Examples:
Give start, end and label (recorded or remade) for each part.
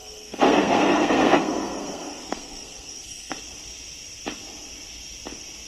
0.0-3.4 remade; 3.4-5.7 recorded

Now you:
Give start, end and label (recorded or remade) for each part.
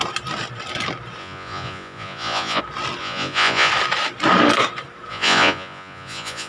0.0-1.2 recorded; 1.2-2.6 remade; 2.6-3.0 recorded; 3.0-3.7 remade; 3.7-5.1 recorded; 5.1-6.5 remade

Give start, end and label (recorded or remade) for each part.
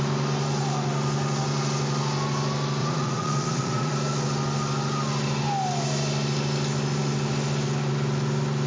0.0-2.8 recorded; 2.8-3.9 remade; 3.9-8.7 recorded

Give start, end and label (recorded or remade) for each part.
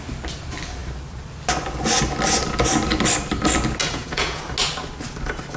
0.0-3.8 recorded; 3.8-4.4 remade; 4.4-5.6 recorded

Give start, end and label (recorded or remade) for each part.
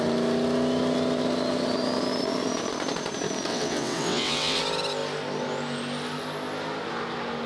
0.0-3.5 recorded; 3.5-4.6 remade; 4.6-7.5 recorded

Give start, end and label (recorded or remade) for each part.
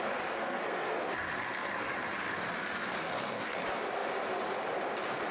0.0-0.4 recorded; 0.4-1.1 remade; 1.1-5.3 recorded